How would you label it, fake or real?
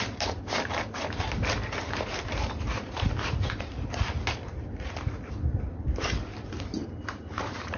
fake